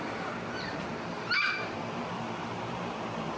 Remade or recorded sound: remade